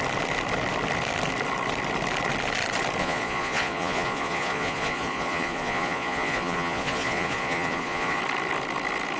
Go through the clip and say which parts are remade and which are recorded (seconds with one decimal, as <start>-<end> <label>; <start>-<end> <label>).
0.0-3.0 recorded; 3.0-8.2 remade; 8.2-9.2 recorded